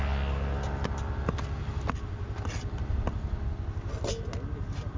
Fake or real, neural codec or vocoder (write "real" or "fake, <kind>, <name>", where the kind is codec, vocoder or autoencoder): real